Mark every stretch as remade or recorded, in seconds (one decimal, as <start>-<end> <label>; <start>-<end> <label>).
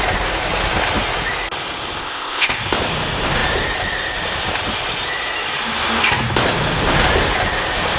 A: 0.0-2.0 recorded; 2.0-2.6 remade; 2.6-8.0 recorded